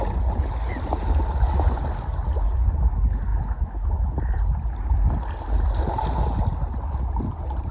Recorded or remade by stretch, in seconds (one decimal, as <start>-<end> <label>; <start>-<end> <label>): 0.0-7.7 recorded